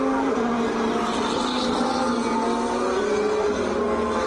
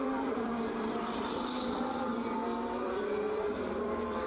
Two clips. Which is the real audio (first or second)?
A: first